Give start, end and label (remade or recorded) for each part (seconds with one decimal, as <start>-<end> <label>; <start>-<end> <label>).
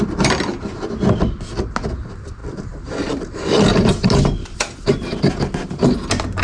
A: 0.0-2.4 recorded; 2.4-5.3 remade; 5.3-6.4 recorded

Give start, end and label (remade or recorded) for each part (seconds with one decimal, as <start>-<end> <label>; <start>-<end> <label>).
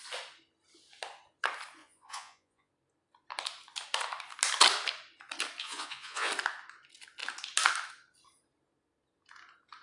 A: 0.0-1.8 recorded; 1.8-2.7 remade; 2.7-5.6 recorded; 5.6-6.3 remade; 6.3-9.8 recorded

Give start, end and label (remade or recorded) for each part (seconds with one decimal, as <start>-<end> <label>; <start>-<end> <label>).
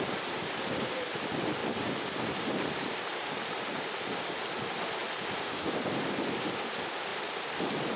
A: 0.0-8.0 recorded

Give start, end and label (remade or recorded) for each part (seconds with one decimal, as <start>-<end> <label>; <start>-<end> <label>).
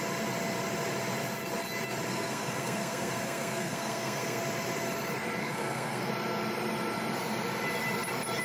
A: 0.0-2.1 recorded; 2.1-4.4 remade; 4.4-5.4 recorded; 5.4-6.1 remade; 6.1-8.4 recorded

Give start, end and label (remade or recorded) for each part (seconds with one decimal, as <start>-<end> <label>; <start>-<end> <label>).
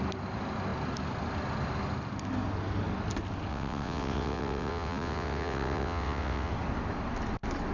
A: 0.0-3.5 recorded; 3.5-6.5 remade; 6.5-7.7 recorded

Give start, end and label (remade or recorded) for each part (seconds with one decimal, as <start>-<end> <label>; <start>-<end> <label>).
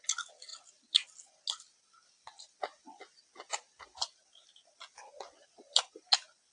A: 0.0-6.5 recorded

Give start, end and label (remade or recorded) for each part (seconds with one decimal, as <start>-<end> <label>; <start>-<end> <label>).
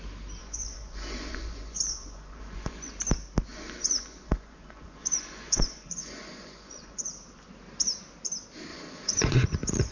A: 0.0-0.4 recorded; 0.4-2.9 remade; 2.9-3.5 recorded; 3.5-7.1 remade; 7.1-8.7 recorded; 8.7-9.9 remade